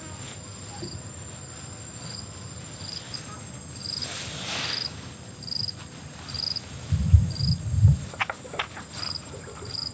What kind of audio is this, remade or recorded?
recorded